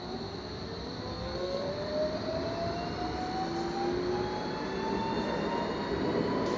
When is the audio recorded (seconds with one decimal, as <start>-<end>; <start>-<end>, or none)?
0.0-1.1; 1.7-6.6

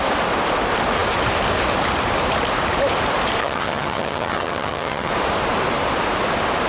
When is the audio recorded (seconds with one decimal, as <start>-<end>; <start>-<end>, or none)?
0.0-3.4; 5.1-6.7

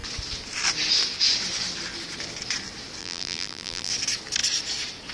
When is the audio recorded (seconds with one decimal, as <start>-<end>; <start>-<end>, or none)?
0.0-3.0; 3.9-5.1